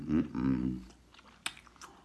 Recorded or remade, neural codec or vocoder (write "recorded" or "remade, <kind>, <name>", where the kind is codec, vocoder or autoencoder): recorded